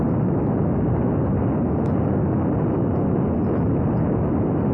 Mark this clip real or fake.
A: real